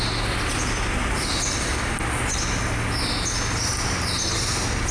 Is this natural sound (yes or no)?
yes